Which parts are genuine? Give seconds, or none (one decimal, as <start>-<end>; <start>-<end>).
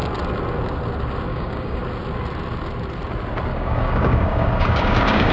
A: 0.0-1.3; 1.8-3.5